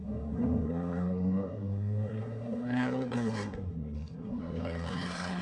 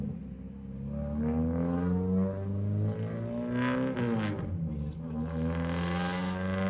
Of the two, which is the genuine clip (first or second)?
second